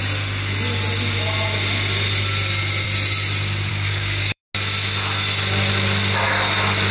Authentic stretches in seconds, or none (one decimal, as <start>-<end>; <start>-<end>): 0.0-3.7; 4.4-6.9